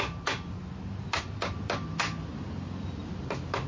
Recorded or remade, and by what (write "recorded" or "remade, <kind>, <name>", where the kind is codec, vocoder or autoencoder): recorded